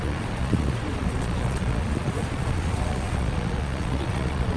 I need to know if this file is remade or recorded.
remade